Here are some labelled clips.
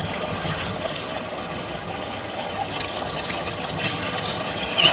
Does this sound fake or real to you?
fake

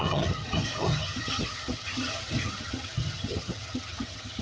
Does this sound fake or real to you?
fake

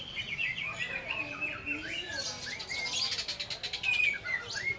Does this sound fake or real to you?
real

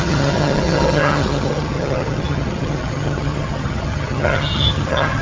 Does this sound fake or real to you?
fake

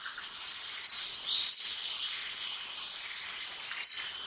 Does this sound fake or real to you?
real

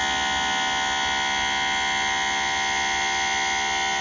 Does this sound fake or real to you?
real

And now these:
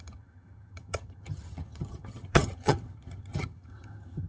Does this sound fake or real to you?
fake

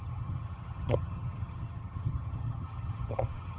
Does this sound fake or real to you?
fake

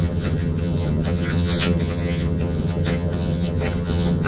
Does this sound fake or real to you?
fake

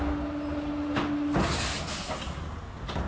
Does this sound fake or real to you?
real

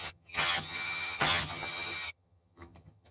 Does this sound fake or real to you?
fake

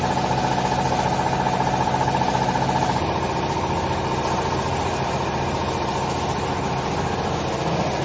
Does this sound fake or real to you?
real